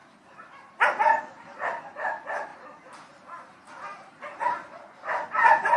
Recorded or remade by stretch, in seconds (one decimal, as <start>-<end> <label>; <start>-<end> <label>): 0.0-5.8 recorded